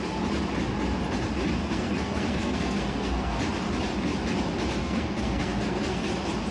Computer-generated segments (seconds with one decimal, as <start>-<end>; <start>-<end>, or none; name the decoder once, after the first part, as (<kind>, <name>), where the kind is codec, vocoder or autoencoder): 1.6-3.4 (codec, SNAC); 4.8-6.1